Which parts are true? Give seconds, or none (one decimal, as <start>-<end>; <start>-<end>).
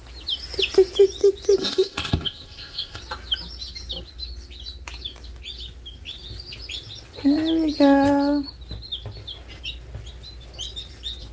0.0-1.6; 3.0-11.3